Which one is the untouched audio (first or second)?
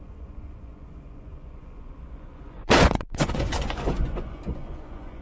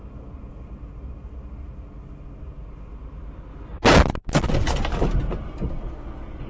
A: second